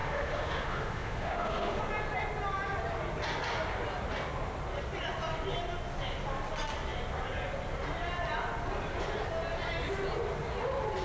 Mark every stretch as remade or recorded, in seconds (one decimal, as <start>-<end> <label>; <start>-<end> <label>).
0.0-1.8 remade; 1.8-11.0 recorded